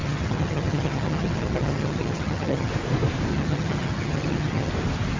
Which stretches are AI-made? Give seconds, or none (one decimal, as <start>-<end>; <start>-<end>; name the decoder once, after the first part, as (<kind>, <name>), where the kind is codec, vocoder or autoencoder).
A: 0.0-2.7 (vocoder, HiFi-GAN); 3.3-4.7